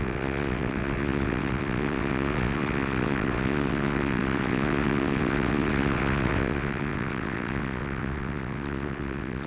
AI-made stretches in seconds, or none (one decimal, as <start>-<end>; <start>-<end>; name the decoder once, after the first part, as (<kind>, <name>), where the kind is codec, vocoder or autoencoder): 0.0-9.5 (vocoder, WaveNeXt)